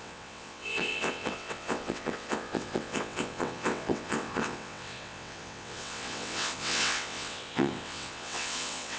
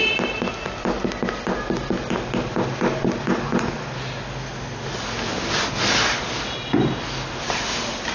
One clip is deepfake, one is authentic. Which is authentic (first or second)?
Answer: second